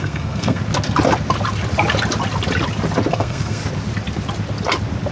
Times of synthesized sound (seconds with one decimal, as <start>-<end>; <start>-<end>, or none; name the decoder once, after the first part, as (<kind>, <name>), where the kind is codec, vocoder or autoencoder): 0.0-0.6 (codec, SNAC); 3.1-3.6